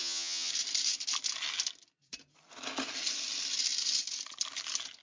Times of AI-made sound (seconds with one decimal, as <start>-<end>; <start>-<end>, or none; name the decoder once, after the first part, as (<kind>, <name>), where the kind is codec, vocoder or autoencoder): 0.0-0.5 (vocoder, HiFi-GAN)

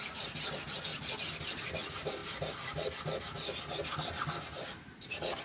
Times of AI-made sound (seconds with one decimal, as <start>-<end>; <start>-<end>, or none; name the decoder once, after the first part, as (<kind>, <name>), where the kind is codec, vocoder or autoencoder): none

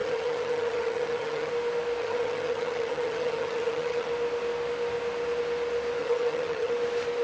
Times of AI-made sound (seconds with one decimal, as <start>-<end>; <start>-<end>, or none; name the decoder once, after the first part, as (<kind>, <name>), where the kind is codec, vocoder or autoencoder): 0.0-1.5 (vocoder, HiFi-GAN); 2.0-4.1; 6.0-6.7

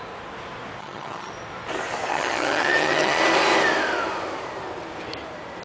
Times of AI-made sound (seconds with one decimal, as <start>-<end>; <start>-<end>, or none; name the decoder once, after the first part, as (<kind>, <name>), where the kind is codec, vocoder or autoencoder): 0.8-1.3 (vocoder, HiFi-GAN); 2.1-3.2

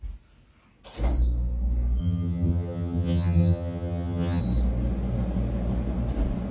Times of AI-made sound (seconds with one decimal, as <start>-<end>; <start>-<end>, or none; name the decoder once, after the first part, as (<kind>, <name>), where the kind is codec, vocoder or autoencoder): 2.0-4.4 (vocoder, HiFi-GAN)